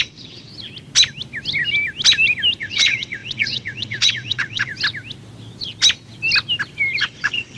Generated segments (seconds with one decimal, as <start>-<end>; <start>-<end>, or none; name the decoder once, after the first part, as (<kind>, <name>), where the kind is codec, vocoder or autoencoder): 0.0-0.5 (vocoder, WaveNeXt); 2.6-4.7; 7.0-7.6